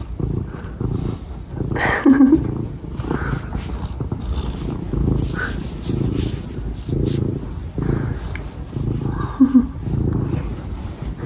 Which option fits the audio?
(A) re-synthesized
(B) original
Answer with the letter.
B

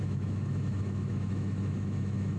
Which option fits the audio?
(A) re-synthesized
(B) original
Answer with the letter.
A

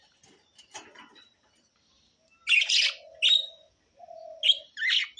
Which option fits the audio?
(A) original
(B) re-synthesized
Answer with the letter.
A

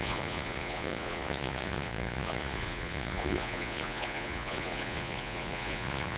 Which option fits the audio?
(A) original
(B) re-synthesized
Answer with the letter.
B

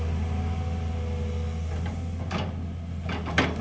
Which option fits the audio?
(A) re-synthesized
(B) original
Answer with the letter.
B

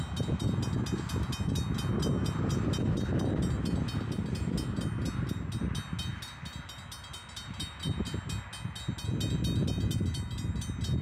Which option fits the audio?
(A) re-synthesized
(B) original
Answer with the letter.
B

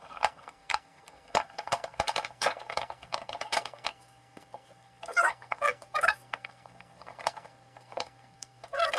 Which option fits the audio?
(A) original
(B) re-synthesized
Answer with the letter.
B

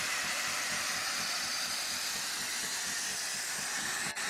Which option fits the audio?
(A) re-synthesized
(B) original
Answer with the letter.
B